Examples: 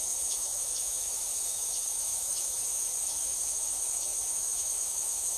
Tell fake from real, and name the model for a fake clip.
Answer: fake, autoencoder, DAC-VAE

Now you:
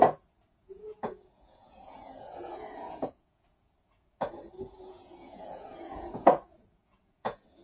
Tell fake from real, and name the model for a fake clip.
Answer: fake, vocoder, Vocos